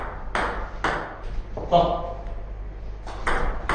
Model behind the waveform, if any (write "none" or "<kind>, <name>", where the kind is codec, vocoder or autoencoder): none